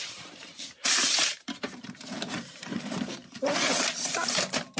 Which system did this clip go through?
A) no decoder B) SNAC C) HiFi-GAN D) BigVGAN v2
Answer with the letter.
D